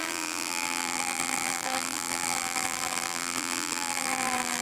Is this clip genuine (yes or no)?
no